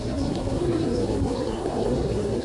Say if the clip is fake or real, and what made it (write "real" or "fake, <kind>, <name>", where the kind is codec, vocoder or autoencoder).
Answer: fake, codec, SNAC